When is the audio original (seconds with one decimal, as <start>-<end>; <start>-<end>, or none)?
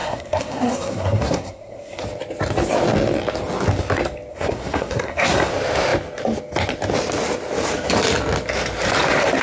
2.0-4.3; 5.5-9.4